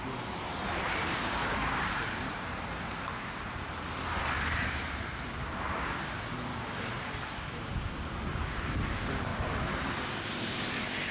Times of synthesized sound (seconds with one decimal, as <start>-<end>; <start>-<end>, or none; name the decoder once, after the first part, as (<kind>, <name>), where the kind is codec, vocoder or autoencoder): 0.0-9.3 (vocoder, BigVGAN v2); 10.2-11.1